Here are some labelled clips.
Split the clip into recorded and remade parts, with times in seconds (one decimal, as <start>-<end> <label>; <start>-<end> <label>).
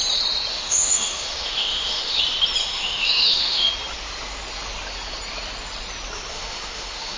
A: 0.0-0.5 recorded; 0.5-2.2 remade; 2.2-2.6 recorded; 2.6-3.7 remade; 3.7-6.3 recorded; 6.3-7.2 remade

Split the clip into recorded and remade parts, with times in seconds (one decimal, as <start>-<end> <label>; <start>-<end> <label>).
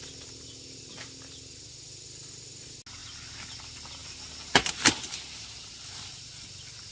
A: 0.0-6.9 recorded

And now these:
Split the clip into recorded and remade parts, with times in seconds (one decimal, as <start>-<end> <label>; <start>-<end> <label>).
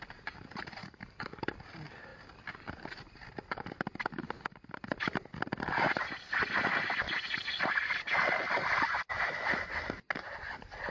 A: 0.0-0.8 recorded; 0.8-1.5 remade; 1.5-10.9 recorded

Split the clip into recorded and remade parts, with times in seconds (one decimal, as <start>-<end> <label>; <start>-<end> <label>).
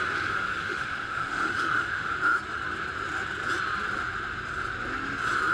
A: 0.0-0.4 recorded; 0.4-2.1 remade; 2.1-5.5 recorded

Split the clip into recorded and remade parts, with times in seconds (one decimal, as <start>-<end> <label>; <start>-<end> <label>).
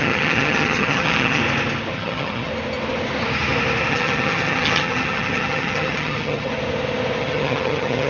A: 0.0-1.4 remade; 1.4-1.9 recorded; 1.9-2.5 remade; 2.5-3.9 recorded; 3.9-6.5 remade; 6.5-7.2 recorded; 7.2-8.1 remade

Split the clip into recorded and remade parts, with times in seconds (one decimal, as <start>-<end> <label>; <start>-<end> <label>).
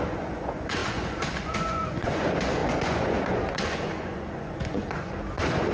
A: 0.0-5.7 remade